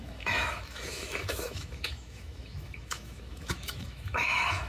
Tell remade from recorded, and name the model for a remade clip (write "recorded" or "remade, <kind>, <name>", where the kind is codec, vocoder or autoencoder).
remade, autoencoder, DAC-VAE